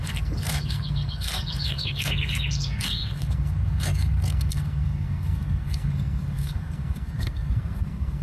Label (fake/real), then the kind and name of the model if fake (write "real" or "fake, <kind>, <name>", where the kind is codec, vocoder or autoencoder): fake, codec, SNAC